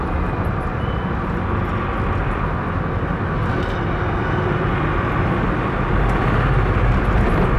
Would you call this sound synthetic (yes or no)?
no